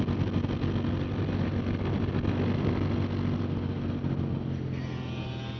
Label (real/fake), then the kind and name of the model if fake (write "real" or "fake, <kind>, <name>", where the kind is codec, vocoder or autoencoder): real